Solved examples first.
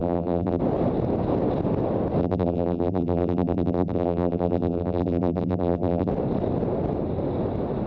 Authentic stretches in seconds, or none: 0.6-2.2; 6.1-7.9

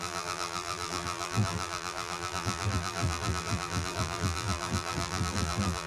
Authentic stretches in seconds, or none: none